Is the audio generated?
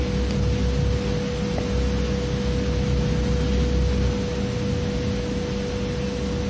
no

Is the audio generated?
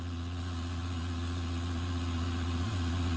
yes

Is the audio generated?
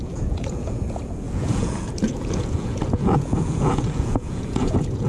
yes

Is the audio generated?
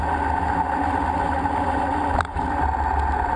no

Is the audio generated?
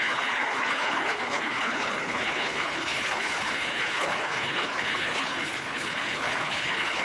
yes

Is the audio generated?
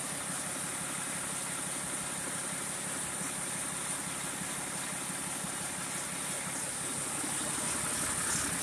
no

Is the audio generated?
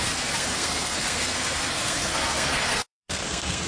yes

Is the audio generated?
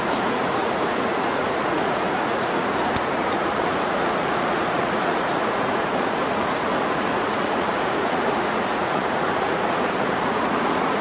yes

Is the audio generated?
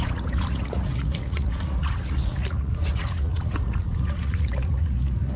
yes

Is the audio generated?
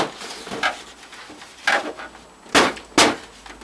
no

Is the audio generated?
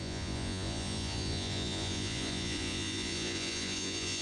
yes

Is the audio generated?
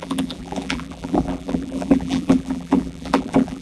yes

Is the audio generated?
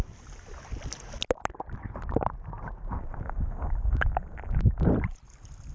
no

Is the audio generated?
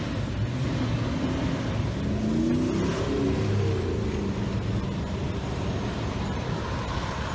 no